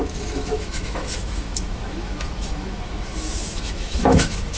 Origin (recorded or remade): remade